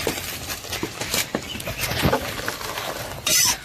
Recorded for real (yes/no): yes